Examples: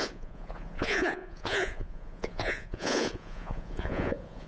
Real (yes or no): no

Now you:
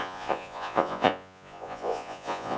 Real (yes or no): no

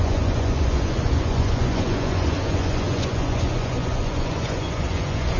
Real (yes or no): no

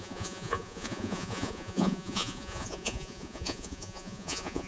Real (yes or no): no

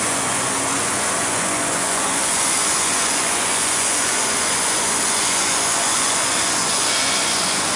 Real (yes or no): no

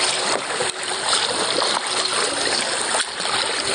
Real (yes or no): yes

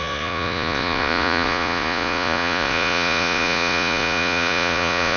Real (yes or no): no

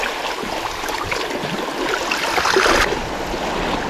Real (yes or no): yes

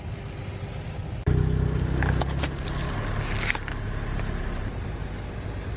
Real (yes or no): yes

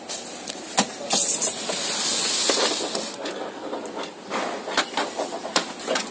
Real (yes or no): yes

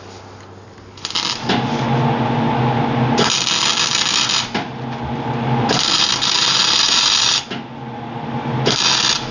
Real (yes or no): yes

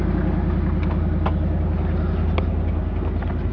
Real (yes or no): yes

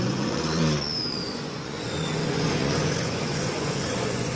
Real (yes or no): no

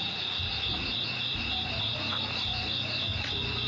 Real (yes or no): no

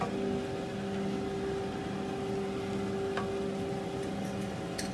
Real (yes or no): yes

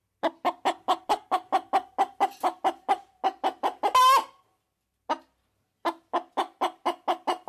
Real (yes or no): yes